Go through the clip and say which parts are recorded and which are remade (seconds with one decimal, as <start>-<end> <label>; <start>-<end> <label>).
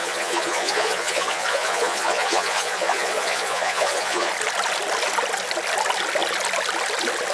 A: 0.0-4.3 remade; 4.3-7.3 recorded